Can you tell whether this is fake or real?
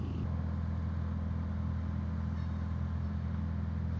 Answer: real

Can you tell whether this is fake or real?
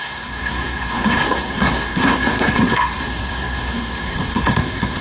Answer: fake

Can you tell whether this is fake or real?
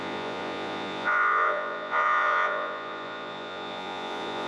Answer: fake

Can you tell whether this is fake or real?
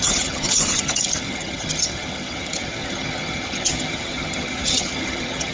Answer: fake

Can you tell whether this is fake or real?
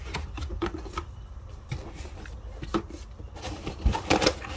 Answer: fake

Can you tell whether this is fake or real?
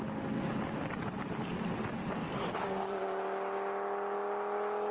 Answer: real